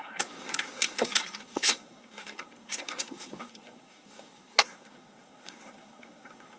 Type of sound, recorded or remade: remade